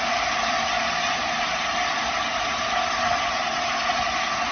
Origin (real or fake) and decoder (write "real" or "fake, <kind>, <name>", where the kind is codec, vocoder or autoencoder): real